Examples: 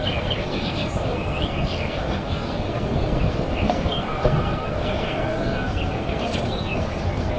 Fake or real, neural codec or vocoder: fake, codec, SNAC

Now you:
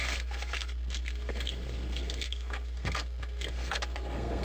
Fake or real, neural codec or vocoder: fake, codec, SNAC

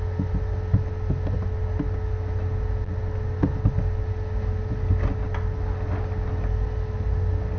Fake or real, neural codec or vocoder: real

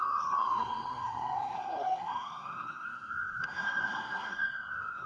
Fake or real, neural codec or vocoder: fake, codec, SNAC